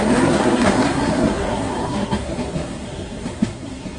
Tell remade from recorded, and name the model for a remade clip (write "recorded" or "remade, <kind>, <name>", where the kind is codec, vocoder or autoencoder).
remade, codec, SNAC